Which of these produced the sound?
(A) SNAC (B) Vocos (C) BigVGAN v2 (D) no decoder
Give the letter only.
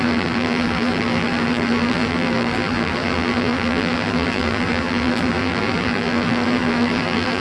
C